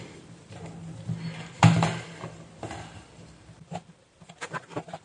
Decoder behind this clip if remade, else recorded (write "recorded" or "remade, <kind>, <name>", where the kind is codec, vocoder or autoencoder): remade, vocoder, BigVGAN v2